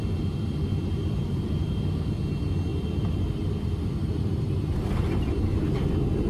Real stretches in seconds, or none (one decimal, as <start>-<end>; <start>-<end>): 0.0-0.7; 2.2-4.0; 4.9-6.3